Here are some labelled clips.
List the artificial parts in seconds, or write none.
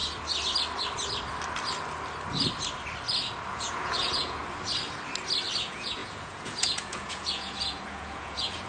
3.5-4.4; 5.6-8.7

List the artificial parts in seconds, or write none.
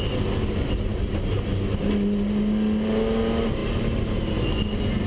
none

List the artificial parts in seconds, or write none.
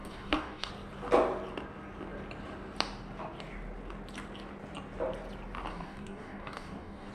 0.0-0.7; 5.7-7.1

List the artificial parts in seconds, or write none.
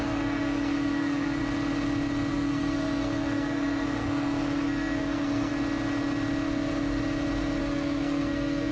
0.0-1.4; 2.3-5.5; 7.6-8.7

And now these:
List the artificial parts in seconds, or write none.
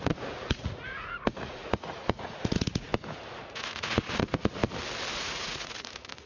0.0-2.9; 3.5-4.6; 5.1-6.3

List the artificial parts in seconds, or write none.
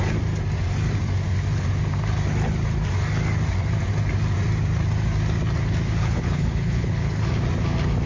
6.0-7.3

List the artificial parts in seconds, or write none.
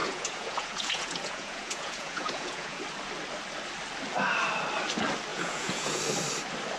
0.0-2.8; 5.3-6.0